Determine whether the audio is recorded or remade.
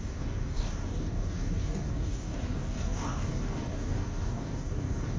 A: remade